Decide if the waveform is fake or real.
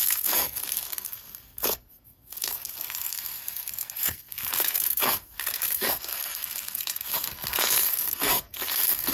fake